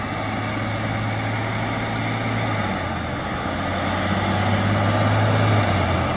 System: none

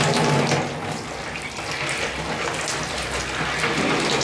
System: none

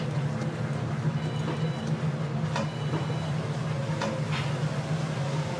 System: none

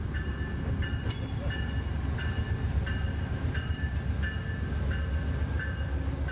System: none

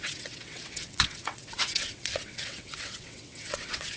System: vocoder, WaveNeXt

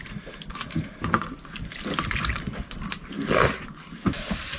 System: none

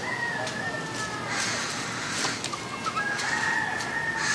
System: none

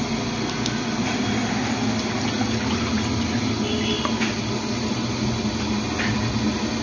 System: none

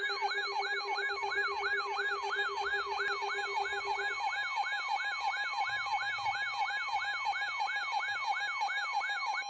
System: none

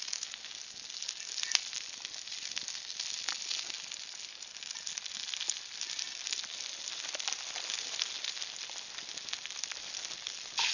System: none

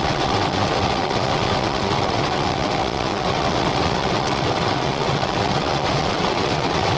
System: vocoder, WaveNeXt